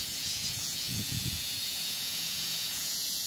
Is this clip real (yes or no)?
no